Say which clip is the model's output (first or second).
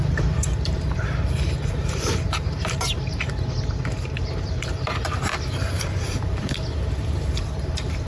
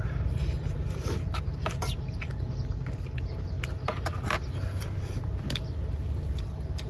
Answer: first